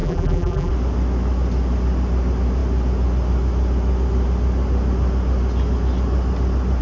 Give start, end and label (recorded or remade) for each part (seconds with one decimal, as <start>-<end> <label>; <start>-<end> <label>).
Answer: 0.0-0.7 remade; 0.7-6.8 recorded